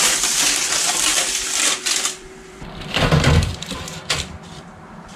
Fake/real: fake